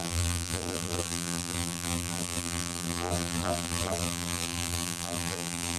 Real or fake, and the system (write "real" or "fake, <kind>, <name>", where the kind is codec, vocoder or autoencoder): fake, vocoder, BigVGAN v2